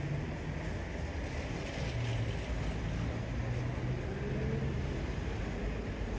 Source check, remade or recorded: recorded